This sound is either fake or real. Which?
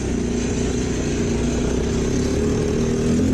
real